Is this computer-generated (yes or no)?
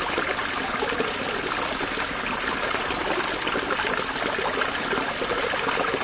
no